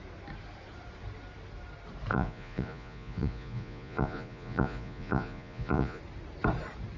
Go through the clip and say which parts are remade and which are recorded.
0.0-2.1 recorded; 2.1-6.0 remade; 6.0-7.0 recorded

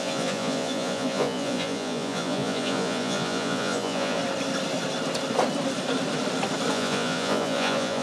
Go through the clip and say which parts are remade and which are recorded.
0.0-4.2 remade; 4.2-6.7 recorded; 6.7-8.0 remade

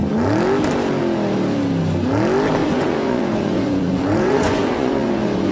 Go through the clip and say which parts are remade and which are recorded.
0.0-2.6 recorded; 2.6-5.5 remade